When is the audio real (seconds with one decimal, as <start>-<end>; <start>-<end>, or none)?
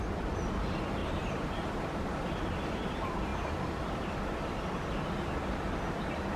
0.0-1.0; 2.4-6.4